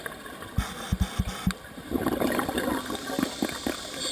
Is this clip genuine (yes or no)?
yes